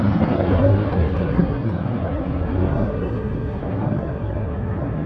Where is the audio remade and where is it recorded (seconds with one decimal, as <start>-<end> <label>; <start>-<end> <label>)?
0.0-5.1 remade